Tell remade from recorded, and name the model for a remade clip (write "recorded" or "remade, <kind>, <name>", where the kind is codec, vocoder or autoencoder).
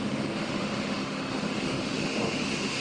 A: remade, autoencoder, DAC-VAE